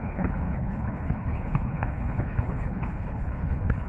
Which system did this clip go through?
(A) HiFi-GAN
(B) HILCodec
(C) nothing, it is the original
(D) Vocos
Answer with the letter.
B